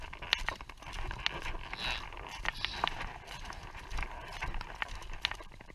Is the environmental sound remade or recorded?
recorded